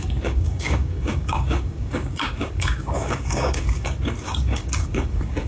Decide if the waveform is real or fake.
fake